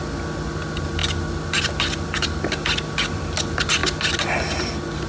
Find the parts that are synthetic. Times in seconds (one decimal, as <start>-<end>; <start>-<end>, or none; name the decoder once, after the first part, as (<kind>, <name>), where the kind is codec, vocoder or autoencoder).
none